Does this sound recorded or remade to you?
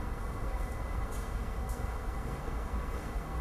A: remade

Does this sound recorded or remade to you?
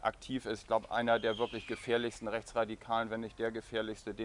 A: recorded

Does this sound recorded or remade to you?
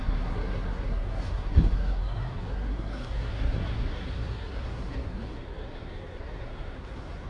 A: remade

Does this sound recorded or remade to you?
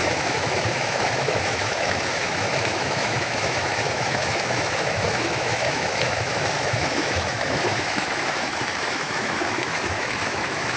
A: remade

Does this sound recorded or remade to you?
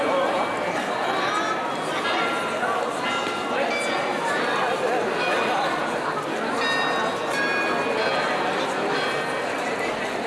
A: recorded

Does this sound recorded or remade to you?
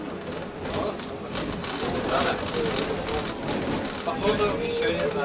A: recorded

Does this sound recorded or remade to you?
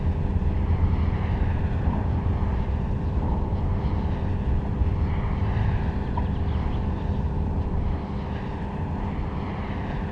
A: recorded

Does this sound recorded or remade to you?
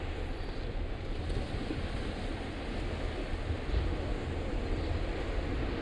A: recorded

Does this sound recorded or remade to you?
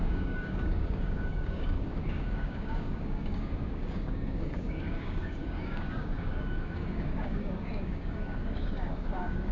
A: remade